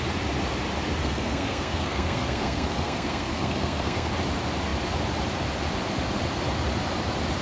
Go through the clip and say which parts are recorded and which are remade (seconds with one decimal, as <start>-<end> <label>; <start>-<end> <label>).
0.0-1.0 recorded; 1.0-4.1 remade; 4.1-7.4 recorded